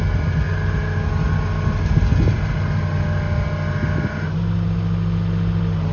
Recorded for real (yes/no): yes